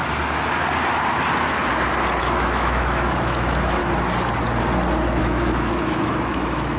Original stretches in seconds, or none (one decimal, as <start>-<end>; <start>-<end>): 0.0-2.2; 3.8-5.2